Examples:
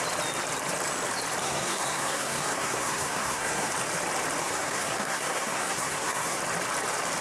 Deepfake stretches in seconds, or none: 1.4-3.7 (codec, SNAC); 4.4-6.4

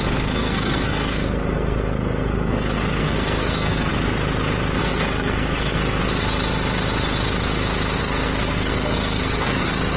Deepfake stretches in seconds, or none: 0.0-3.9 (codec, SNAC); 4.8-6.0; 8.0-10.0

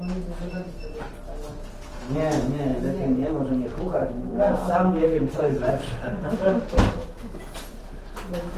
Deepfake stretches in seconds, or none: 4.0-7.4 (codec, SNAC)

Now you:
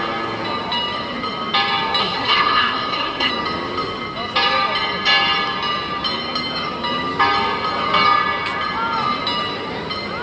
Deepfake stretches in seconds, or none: 2.0-3.3 (codec, SNAC)

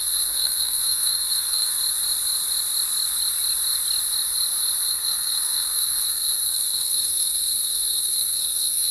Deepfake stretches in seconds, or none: 0.0-1.7 (codec, SNAC); 4.9-8.9

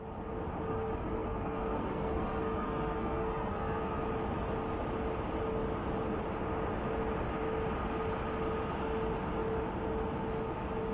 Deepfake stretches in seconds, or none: 0.7-4.0 (codec, SNAC)

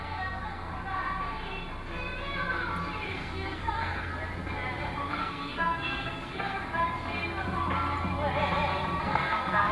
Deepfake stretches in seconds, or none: 0.0-0.7 (codec, SNAC); 3.1-4.1; 5.1-6.6; 9.0-9.7